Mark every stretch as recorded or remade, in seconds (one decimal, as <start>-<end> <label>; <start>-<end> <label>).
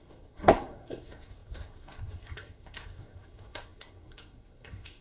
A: 0.0-5.0 remade